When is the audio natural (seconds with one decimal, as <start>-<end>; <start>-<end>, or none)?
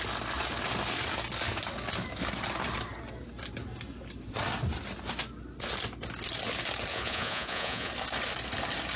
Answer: 0.0-6.9; 7.9-9.0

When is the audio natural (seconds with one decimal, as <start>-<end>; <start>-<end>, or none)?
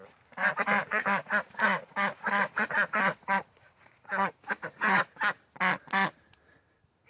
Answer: 0.0-0.8; 5.1-7.1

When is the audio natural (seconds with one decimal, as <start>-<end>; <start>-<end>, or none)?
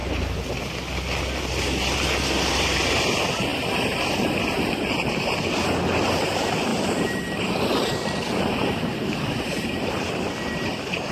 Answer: 0.0-3.5; 4.0-6.7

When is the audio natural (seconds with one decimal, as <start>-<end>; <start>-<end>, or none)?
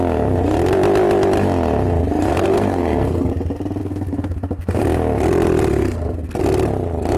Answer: 0.0-2.3; 3.3-3.8; 4.8-5.7; 6.4-7.2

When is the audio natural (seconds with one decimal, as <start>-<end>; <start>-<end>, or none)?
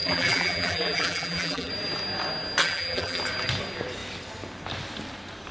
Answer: 1.7-2.6; 3.2-5.5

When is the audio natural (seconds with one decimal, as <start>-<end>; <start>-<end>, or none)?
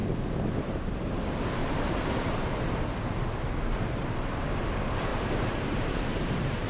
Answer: 0.0-1.6; 3.2-5.1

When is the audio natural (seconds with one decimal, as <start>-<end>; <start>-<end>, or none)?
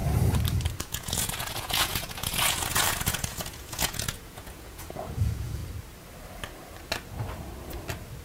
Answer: 0.0-0.8; 5.6-8.2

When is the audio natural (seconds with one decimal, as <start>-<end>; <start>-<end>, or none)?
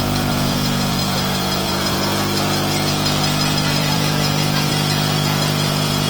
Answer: none